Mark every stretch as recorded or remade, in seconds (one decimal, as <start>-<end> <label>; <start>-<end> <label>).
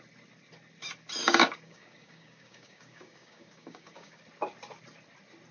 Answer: 0.0-1.2 recorded; 1.2-4.2 remade; 4.2-5.5 recorded